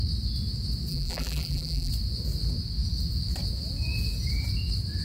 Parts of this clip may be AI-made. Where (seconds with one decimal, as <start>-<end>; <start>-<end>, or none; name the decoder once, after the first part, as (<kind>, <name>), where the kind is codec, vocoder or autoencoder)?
0.9-1.9 (vocoder, BigVGAN v2)